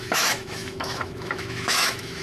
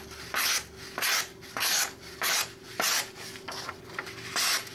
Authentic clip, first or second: second